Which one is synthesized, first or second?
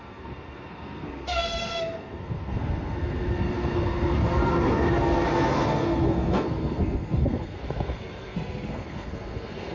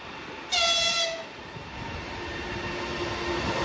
first